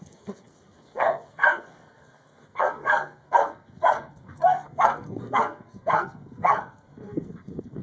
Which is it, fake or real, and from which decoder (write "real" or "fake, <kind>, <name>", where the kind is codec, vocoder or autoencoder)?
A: fake, codec, SNAC